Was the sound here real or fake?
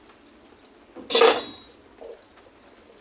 real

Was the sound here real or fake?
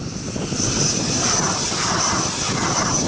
real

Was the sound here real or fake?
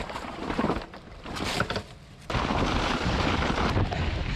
fake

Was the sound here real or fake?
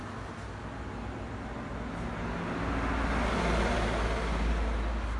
real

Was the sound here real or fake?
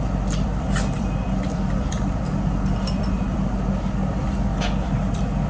fake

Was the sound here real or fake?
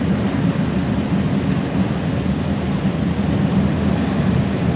real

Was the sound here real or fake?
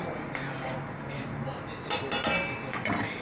fake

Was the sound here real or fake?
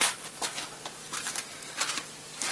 real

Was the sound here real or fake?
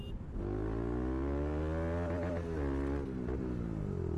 real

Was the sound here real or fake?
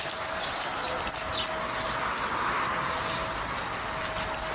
real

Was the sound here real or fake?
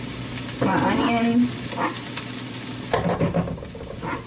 real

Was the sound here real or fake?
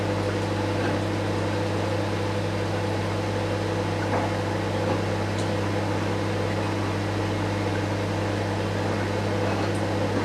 real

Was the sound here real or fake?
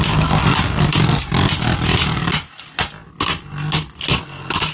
real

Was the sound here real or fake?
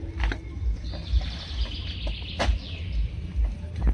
real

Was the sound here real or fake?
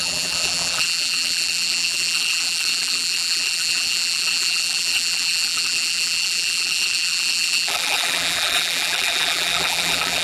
fake